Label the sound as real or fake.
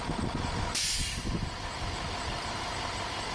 fake